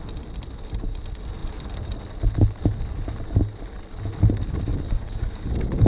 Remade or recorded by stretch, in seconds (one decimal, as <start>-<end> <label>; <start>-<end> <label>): 0.0-4.7 recorded; 4.7-5.9 remade